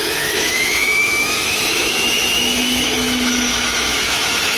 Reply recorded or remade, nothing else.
remade